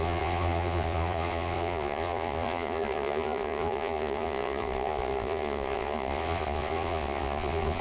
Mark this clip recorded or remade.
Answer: remade